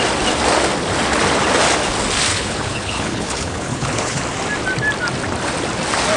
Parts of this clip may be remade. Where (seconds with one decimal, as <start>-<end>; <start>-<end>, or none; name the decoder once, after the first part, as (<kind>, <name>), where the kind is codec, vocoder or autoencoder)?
2.3-4.2 (codec, HILCodec)